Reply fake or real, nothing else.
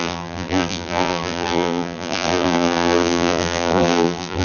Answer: fake